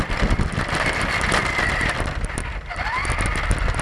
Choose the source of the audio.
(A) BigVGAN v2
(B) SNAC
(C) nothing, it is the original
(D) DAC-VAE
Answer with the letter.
C